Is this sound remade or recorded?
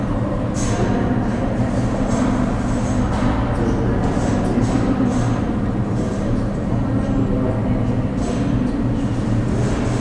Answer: recorded